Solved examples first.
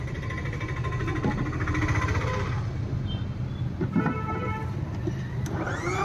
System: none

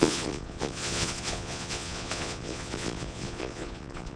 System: vocoder, Vocos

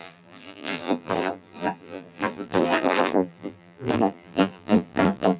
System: vocoder, BigVGAN v2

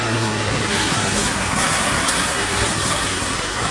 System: codec, SNAC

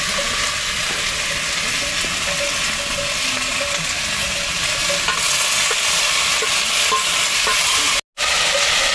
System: none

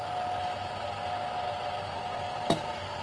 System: none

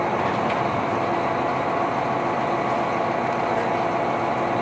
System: none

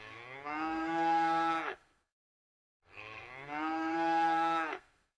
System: codec, SNAC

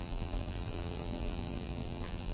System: vocoder, BigVGAN v2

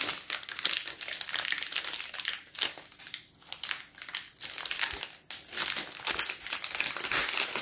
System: none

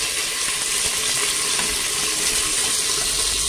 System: none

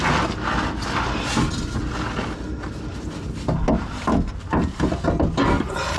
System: none